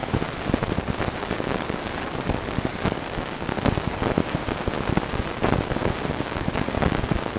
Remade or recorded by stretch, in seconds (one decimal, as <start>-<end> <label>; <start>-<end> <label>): 0.0-1.2 recorded; 1.2-4.2 remade; 4.2-6.1 recorded; 6.1-7.4 remade